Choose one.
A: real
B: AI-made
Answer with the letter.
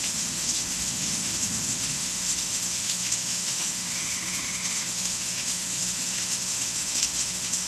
B